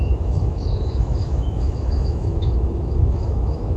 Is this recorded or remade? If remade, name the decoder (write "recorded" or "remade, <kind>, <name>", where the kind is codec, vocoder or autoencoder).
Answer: remade, autoencoder, DAC-VAE